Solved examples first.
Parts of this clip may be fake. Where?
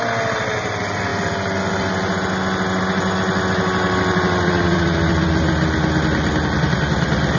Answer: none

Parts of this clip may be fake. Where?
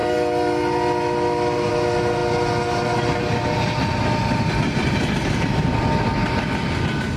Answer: none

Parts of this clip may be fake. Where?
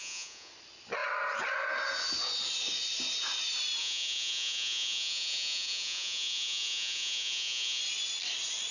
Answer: 0.0-0.5 (vocoder, Vocos); 3.8-7.8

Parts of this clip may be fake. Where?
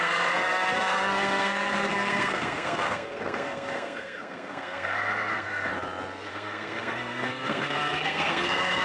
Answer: 0.0-5.7 (codec, SNAC); 6.3-8.8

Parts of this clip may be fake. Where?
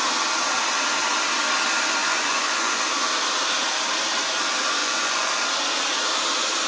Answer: 2.0-2.8 (vocoder, Vocos); 4.8-5.3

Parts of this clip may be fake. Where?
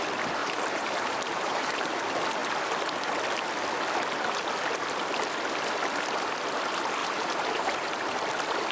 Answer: 0.4-2.0 (vocoder, BigVGAN v2); 7.0-7.8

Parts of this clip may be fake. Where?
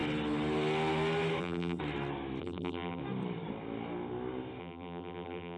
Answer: 1.4-1.8 (vocoder, BigVGAN v2); 2.4-3.0; 4.6-5.6